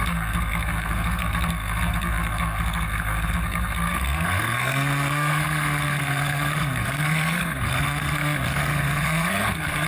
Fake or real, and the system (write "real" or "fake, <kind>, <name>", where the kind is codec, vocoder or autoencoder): fake, codec, SNAC